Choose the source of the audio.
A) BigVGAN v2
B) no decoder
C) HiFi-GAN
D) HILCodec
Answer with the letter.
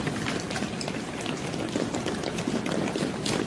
B